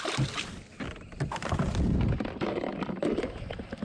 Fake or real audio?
real